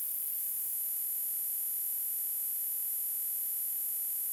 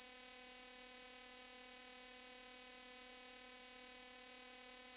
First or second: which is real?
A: first